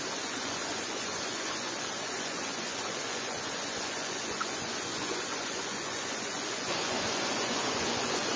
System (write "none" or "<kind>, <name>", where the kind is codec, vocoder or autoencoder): vocoder, Vocos